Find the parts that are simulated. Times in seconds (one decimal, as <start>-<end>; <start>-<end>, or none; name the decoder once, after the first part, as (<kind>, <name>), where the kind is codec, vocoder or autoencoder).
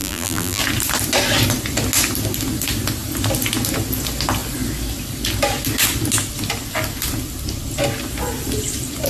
0.0-0.6 (vocoder, BigVGAN v2)